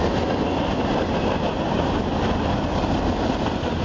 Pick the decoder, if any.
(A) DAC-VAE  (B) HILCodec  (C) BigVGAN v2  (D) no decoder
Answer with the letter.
D